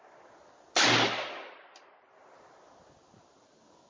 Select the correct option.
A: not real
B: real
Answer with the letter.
B